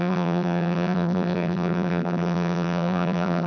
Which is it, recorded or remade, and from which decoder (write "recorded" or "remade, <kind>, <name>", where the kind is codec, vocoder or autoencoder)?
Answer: remade, vocoder, BigVGAN v2